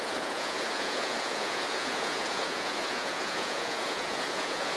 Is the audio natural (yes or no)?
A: no